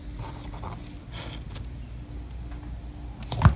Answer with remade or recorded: recorded